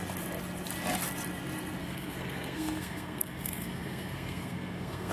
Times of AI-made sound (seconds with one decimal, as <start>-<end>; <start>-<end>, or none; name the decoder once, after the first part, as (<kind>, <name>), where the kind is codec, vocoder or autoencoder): 1.8-5.1 (codec, SNAC)